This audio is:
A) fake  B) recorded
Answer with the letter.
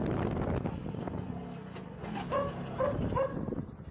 B